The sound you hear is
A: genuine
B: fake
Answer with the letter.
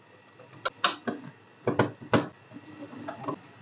A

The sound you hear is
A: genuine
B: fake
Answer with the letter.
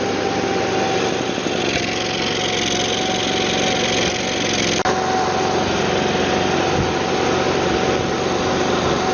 A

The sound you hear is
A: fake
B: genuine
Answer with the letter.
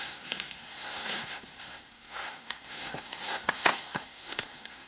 A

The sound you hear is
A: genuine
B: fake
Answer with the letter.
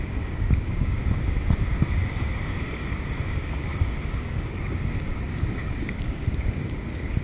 B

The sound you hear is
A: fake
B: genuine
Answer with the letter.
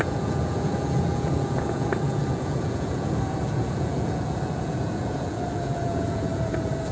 A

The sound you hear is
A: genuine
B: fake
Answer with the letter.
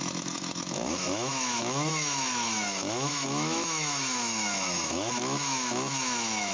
B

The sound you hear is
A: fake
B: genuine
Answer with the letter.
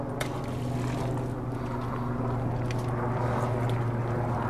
B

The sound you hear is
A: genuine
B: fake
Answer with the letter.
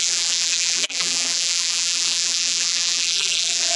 B